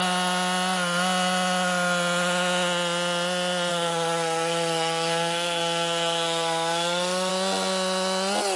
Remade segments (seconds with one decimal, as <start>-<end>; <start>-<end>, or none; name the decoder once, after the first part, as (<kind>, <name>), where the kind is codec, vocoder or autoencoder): 3.7-7.3 (codec, SNAC)